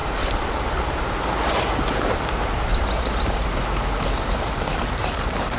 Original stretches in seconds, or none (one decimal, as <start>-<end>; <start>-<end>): 0.5-2.7